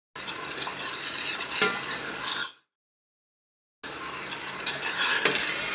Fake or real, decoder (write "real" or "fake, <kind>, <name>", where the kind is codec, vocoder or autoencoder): real